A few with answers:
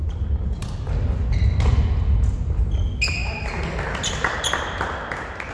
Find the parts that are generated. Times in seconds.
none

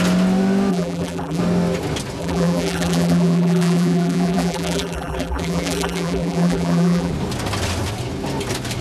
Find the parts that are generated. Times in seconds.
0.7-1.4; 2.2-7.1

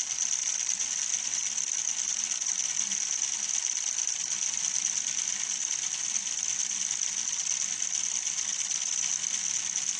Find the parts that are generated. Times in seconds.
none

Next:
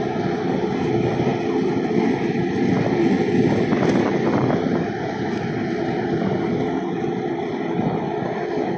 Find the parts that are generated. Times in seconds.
none

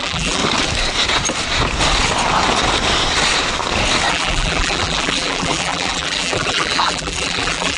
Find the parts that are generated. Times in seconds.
0.0-0.4; 4.1-7.8

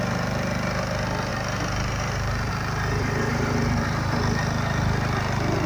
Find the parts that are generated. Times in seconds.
1.3-2.5; 3.0-4.2